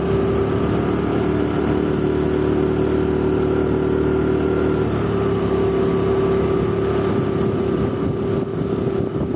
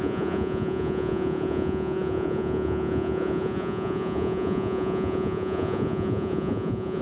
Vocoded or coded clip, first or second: second